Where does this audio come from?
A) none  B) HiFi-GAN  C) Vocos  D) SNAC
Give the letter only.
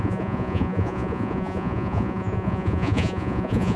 C